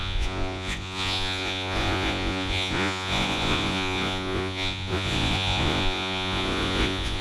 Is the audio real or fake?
fake